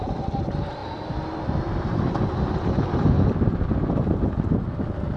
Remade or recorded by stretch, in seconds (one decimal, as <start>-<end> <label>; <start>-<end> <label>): 0.0-5.2 recorded

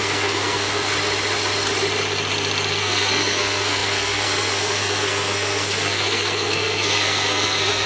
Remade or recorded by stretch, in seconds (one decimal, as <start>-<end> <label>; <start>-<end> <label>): 0.0-0.9 remade; 0.9-2.7 recorded; 2.7-7.9 remade